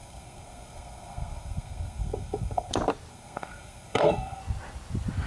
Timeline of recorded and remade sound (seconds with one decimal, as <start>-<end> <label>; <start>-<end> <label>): 0.0-2.7 remade; 2.7-3.1 recorded; 3.1-4.4 remade; 4.4-5.3 recorded